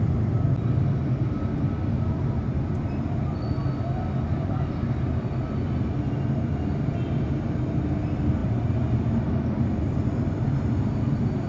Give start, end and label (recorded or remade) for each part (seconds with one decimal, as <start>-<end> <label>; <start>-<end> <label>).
0.0-11.5 recorded